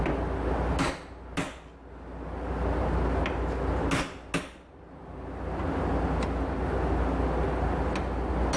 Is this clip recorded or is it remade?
recorded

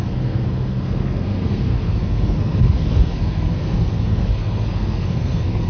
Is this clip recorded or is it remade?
remade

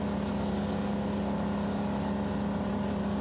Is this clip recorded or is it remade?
recorded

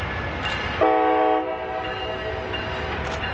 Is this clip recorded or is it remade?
recorded